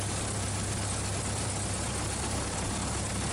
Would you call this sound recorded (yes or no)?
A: yes